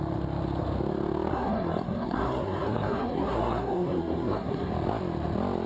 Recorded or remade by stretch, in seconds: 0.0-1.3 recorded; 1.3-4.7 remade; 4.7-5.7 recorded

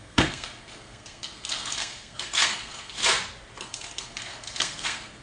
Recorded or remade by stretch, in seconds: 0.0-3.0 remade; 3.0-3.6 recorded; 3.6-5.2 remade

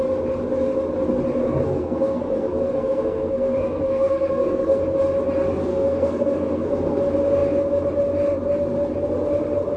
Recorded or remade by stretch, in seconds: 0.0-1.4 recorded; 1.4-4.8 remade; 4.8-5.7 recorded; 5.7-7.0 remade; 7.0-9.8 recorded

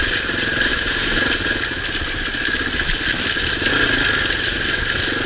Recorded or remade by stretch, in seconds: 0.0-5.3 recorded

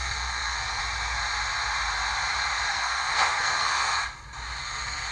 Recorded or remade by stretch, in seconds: 0.0-0.8 remade; 0.8-2.7 recorded; 2.7-4.0 remade; 4.0-4.6 recorded; 4.6-5.1 remade

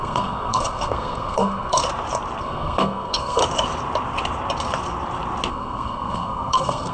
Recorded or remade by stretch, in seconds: 0.0-1.8 remade; 1.8-2.4 recorded; 2.4-3.4 remade; 3.4-5.5 recorded; 5.5-6.9 remade